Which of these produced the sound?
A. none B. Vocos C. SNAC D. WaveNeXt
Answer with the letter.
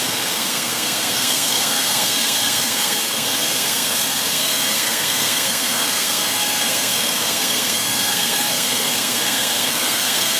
C